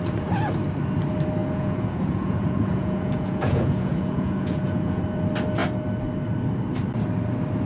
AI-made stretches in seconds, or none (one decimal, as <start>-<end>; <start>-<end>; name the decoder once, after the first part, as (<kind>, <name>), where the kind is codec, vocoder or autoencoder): 1.4-5.0 (vocoder, Vocos)